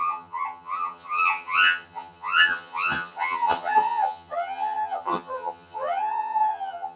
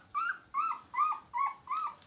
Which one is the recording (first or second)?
second